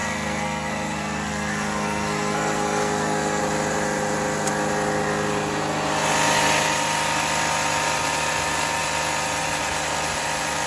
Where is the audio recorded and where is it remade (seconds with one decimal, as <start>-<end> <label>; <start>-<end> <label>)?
0.0-3.4 remade; 3.4-10.7 recorded